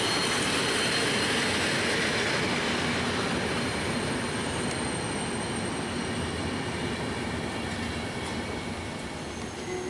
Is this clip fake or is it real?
real